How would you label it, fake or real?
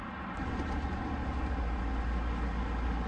real